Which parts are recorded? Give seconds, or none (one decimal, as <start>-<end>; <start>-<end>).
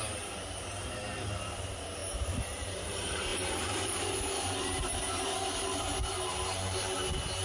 none